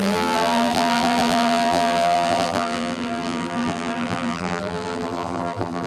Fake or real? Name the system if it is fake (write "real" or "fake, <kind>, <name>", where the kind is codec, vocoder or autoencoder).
fake, vocoder, BigVGAN v2